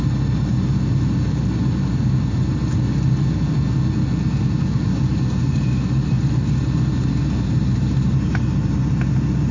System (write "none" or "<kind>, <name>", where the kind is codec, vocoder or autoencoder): none